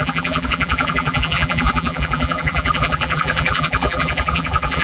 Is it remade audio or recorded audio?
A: remade